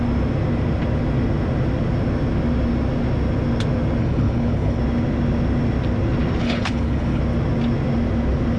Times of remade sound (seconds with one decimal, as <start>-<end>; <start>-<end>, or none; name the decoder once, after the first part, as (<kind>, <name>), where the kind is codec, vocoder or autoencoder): 4.0-4.8 (codec, HILCodec); 6.4-7.2